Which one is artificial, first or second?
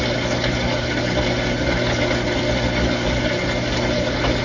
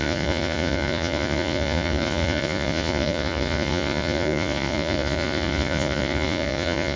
second